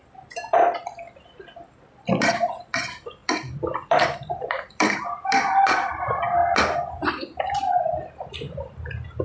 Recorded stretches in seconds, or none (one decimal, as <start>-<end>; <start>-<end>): 6.4-7.0